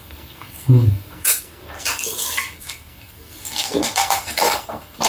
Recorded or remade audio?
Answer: remade